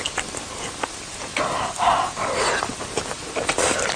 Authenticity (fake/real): real